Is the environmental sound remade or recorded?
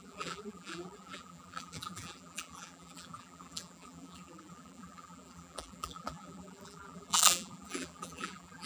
remade